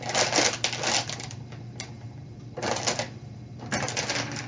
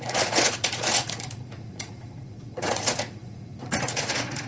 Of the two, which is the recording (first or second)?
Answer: first